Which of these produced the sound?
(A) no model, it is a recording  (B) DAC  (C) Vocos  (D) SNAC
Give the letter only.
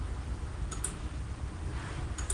A